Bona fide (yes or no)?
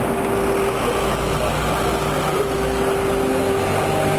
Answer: yes